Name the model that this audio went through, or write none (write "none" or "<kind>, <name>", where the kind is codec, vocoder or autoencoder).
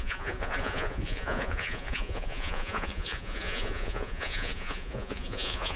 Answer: vocoder, Vocos